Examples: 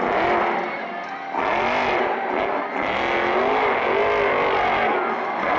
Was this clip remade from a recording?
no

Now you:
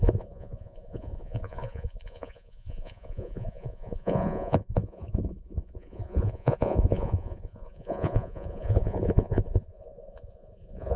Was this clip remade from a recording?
yes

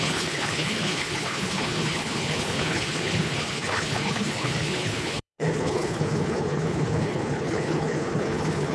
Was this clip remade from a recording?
yes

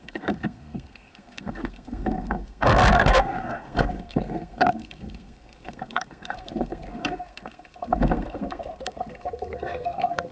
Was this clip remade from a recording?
yes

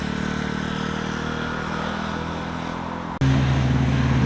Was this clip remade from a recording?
no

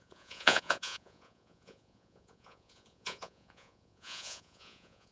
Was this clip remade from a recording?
yes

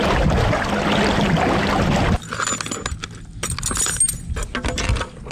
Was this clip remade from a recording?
no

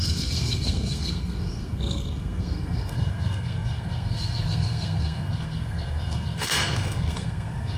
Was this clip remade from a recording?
yes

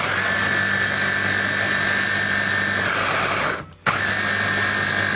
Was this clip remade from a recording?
no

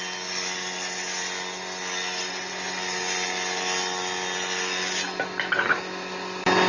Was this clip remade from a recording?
no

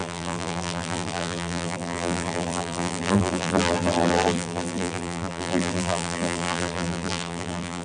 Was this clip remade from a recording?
yes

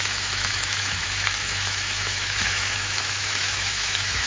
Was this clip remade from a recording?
yes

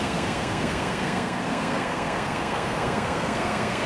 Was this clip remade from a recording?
yes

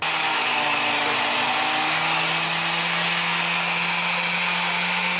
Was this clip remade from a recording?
no